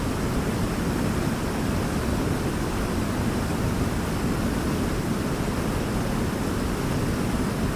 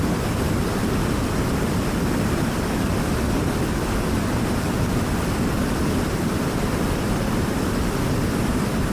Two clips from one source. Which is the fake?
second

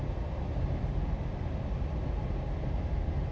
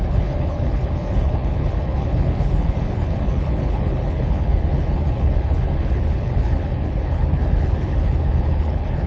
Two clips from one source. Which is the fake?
second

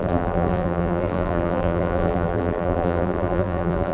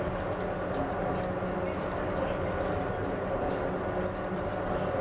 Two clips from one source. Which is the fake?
first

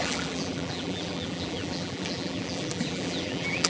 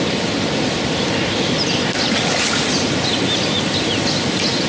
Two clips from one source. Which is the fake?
first